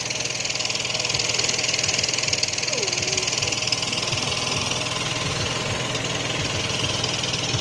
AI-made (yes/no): no